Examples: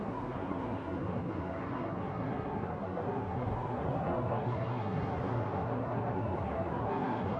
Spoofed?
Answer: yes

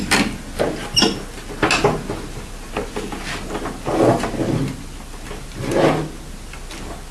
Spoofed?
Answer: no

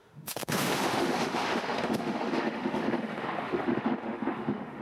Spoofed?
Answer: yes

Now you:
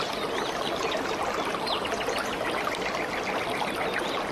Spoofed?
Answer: no